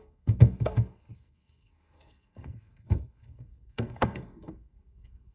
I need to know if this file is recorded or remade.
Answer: remade